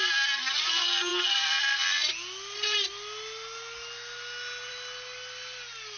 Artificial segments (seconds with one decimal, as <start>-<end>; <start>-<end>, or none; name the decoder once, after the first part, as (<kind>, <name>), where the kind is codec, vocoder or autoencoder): none